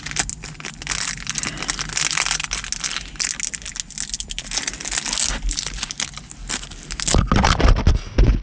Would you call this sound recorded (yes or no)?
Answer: yes